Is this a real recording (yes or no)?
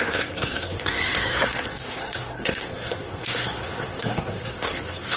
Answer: no